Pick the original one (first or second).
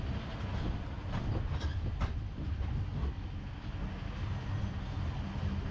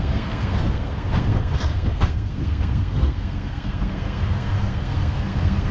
first